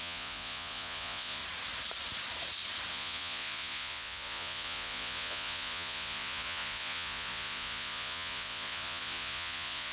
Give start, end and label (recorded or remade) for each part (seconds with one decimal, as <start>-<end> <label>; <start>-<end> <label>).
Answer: 0.0-1.4 remade; 1.4-2.9 recorded; 2.9-9.9 remade